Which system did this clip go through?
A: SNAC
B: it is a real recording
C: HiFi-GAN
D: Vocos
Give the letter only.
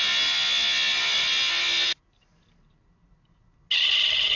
B